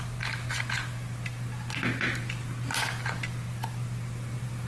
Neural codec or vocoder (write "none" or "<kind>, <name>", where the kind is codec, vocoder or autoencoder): none